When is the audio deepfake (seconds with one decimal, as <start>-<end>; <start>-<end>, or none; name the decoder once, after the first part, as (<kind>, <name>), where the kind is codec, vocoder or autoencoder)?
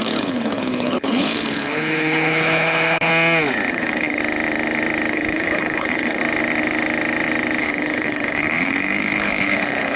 0.0-3.1 (codec, HILCodec); 3.7-4.2; 5.1-6.2; 7.6-10.0